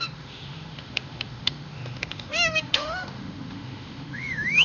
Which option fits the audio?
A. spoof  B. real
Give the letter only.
A